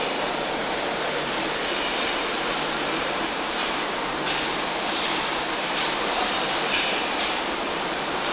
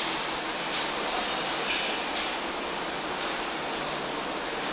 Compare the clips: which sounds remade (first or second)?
first